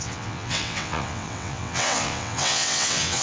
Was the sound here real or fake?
fake